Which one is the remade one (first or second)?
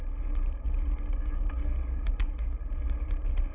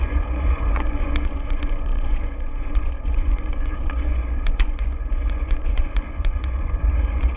second